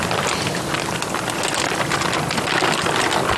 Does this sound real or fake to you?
real